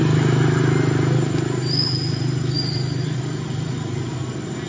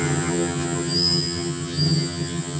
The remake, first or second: second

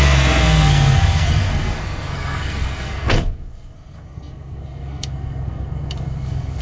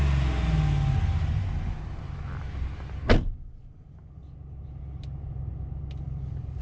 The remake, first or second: first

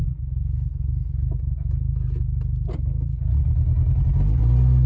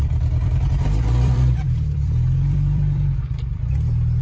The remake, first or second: second